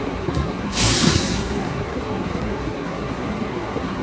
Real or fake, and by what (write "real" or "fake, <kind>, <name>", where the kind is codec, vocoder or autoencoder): fake, codec, SNAC